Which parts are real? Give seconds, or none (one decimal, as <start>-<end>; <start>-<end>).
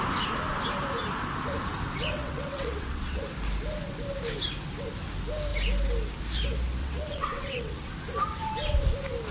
0.0-2.2; 3.2-6.8; 7.9-9.3